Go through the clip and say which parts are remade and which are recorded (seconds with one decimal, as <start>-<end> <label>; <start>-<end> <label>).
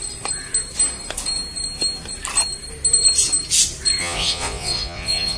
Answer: 0.0-4.0 recorded; 4.0-5.4 remade